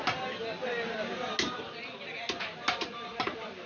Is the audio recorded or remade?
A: recorded